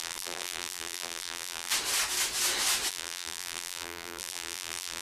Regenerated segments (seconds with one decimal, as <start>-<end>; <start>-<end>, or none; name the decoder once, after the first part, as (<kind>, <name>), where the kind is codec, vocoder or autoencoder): 0.0-1.7 (vocoder, BigVGAN v2); 2.9-5.0